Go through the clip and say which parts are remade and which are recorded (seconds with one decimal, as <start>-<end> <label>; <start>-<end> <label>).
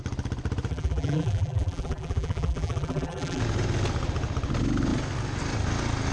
0.0-0.7 recorded; 0.7-3.4 remade; 3.4-6.1 recorded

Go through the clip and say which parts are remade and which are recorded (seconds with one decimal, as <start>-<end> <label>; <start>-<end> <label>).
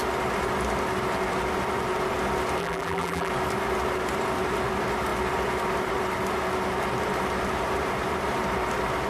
0.0-2.6 recorded; 2.6-3.3 remade; 3.3-9.1 recorded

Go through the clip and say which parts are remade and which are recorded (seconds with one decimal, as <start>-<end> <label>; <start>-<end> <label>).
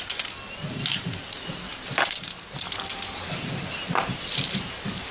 0.0-1.7 recorded; 1.7-2.6 remade; 2.6-5.1 recorded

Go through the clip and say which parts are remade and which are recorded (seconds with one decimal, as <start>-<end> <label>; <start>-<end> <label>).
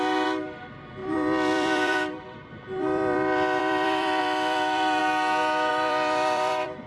0.0-5.0 remade; 5.0-5.7 recorded; 5.7-6.9 remade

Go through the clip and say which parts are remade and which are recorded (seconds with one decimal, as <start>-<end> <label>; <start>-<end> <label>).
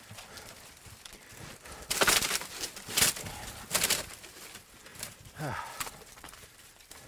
0.0-4.9 recorded; 4.9-5.5 remade; 5.5-7.1 recorded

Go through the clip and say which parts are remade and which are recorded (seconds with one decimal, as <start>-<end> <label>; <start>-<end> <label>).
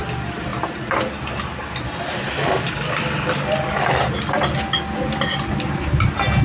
0.0-6.4 recorded